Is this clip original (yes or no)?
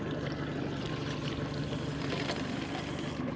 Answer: yes